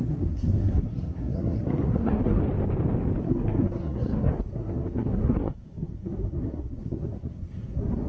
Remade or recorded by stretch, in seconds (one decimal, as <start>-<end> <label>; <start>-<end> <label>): 0.0-2.4 remade; 2.4-3.2 recorded; 3.2-8.1 remade